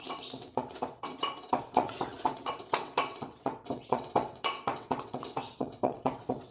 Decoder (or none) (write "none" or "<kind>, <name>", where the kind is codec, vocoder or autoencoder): vocoder, WaveNeXt